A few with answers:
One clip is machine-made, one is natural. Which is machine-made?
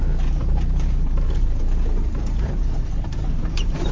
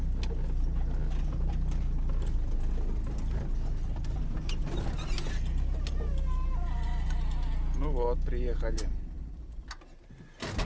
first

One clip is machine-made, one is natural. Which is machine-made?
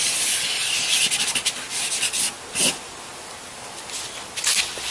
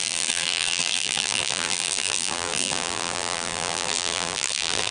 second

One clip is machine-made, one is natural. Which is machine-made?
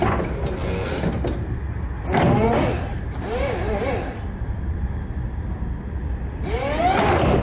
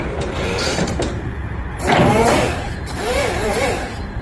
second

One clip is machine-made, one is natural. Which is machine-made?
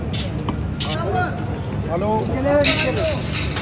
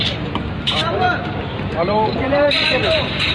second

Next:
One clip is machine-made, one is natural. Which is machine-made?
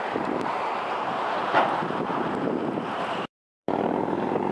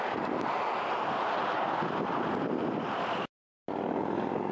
first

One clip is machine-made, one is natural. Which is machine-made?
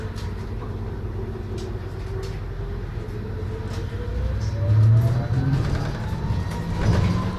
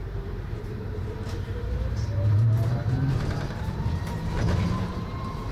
second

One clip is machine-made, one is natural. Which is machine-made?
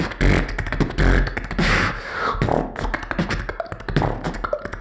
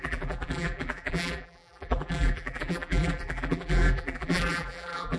second